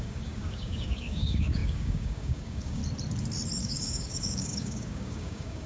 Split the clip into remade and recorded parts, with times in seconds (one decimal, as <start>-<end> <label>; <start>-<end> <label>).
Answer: 0.0-2.8 remade; 2.8-3.6 recorded; 3.6-5.7 remade